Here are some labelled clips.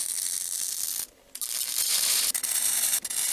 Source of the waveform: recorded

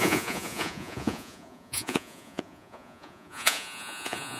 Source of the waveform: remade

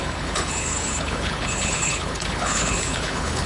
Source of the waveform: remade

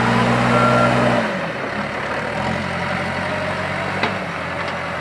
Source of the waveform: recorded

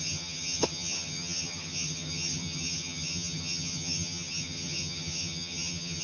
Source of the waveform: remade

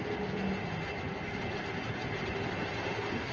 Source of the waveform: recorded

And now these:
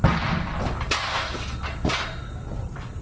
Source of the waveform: recorded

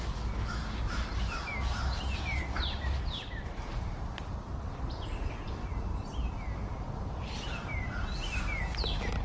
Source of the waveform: recorded